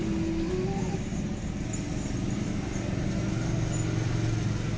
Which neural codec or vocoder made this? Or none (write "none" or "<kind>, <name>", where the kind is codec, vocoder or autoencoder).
none